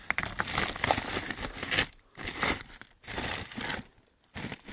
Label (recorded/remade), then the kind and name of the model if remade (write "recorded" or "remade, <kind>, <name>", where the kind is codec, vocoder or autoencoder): recorded